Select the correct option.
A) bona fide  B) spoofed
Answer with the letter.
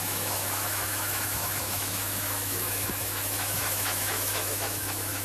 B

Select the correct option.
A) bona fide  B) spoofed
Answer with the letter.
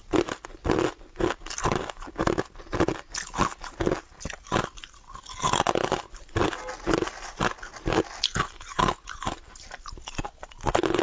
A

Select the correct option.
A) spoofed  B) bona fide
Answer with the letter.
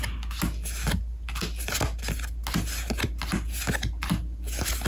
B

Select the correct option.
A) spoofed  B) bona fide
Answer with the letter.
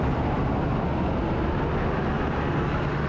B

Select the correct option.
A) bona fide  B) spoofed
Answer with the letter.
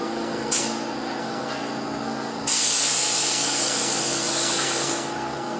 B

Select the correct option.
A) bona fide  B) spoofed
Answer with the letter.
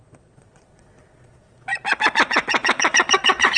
B